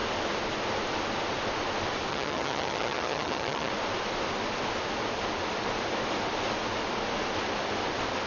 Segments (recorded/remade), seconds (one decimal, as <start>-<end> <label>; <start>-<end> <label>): 0.0-2.1 recorded; 2.1-3.7 remade; 3.7-8.3 recorded